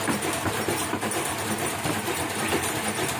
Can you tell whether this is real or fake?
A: fake